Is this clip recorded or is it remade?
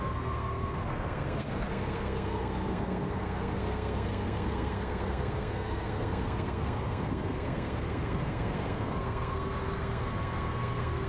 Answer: remade